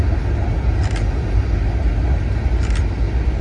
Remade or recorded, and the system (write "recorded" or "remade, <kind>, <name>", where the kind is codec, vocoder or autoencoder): recorded